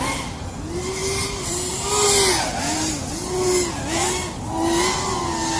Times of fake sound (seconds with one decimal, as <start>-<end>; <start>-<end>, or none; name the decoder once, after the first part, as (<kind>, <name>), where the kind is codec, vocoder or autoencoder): none